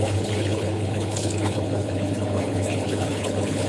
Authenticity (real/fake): fake